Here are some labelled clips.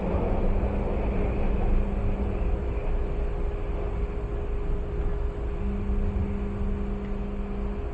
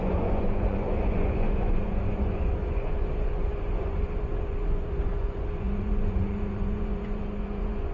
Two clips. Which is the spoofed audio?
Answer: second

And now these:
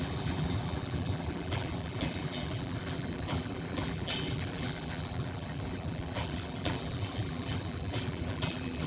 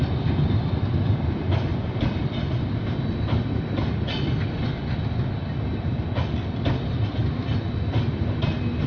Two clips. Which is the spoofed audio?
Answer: first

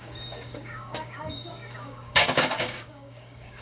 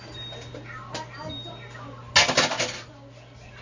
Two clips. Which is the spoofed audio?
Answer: first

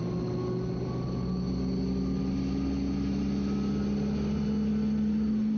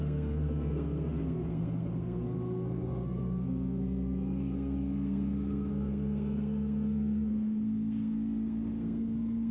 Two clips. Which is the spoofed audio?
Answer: second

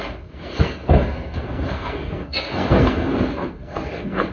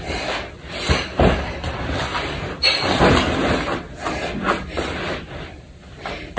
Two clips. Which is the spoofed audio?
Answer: first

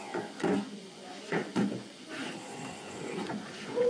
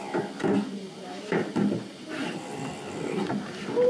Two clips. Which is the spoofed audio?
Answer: first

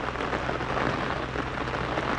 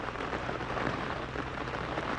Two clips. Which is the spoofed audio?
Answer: second